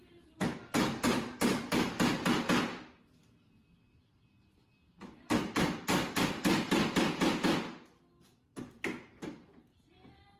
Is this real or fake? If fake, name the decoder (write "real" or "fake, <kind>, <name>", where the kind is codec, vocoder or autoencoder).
real